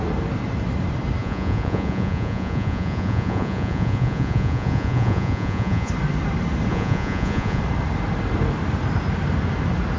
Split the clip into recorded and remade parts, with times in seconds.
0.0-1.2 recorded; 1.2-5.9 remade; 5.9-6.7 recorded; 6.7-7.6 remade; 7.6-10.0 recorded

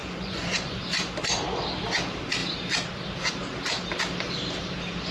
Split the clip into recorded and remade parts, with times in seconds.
0.0-0.8 remade; 0.8-5.1 recorded

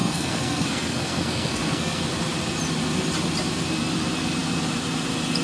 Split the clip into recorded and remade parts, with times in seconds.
0.0-2.0 remade; 2.0-5.4 recorded

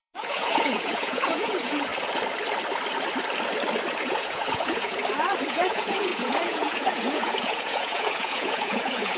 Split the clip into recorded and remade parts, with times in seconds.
0.0-1.9 remade; 1.9-4.0 recorded; 4.0-5.0 remade; 5.0-5.5 recorded; 5.5-9.2 remade

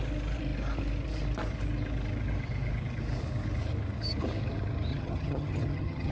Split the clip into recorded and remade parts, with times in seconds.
0.0-4.9 recorded; 4.9-6.1 remade

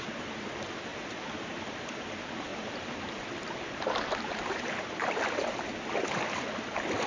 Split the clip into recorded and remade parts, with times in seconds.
0.0-0.9 recorded; 0.9-1.6 remade; 1.6-2.5 recorded; 2.5-5.2 remade; 5.2-7.1 recorded